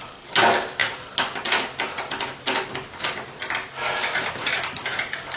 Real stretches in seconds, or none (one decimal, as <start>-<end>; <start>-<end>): 0.0-5.4